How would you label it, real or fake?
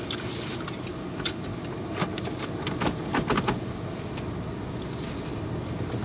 real